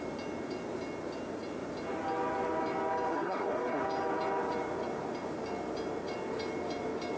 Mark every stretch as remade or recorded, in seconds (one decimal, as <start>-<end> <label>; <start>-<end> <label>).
0.0-3.1 recorded; 3.1-3.8 remade; 3.8-7.2 recorded